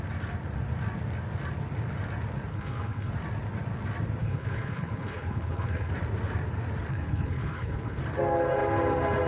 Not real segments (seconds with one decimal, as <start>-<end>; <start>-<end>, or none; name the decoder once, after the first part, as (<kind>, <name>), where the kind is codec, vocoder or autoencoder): 2.5-3.1 (codec, HILCodec); 4.2-5.9; 6.9-8.0